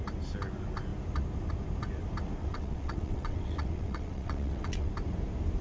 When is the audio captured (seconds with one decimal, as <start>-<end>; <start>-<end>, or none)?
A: 0.0-2.4; 4.9-5.6